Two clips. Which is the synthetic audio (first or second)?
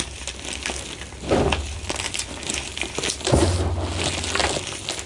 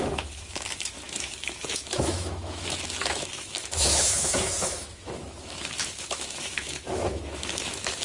second